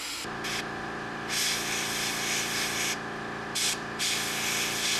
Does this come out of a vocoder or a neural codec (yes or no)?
no